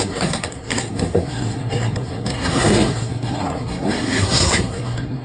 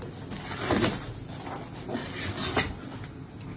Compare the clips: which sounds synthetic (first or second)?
first